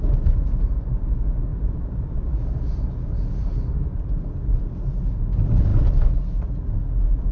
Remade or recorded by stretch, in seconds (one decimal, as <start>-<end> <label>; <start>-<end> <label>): 0.0-1.5 recorded; 1.5-4.1 remade; 4.1-5.7 recorded; 5.7-6.6 remade; 6.6-7.3 recorded